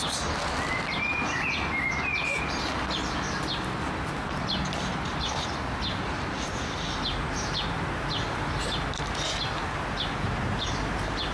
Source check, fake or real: real